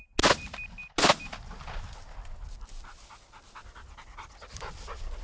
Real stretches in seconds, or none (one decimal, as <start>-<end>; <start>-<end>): 0.0-5.2